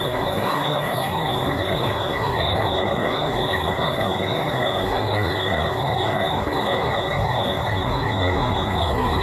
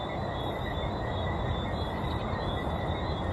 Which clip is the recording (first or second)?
second